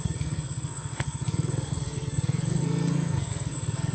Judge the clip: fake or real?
fake